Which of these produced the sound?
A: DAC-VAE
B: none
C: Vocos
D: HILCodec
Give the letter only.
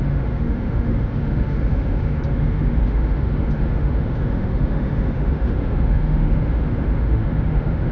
A